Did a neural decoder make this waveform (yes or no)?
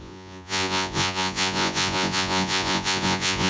yes